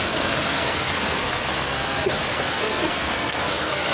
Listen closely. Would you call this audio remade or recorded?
remade